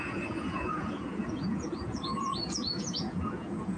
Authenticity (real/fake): fake